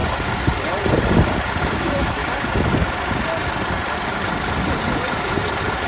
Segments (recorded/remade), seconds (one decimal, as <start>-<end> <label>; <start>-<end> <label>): 0.0-1.6 recorded; 1.6-2.2 remade; 2.2-5.9 recorded